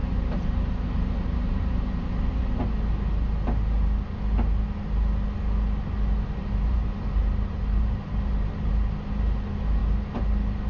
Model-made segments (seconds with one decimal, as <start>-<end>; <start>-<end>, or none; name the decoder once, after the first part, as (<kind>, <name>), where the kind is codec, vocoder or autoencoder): 0.0-2.4 (vocoder, BigVGAN v2); 6.4-8.7